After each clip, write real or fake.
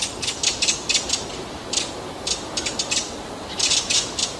real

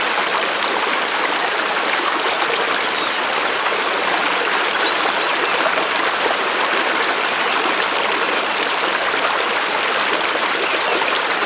real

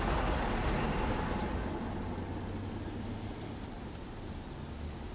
real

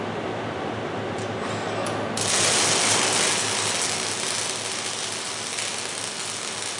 real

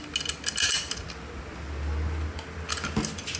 real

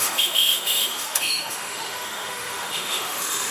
fake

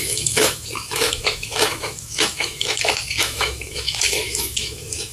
fake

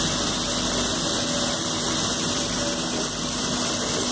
real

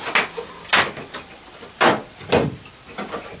real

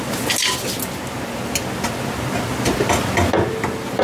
real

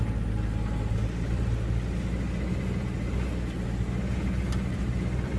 real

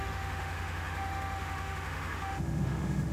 fake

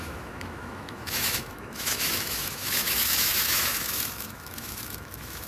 fake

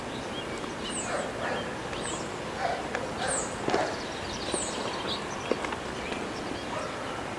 real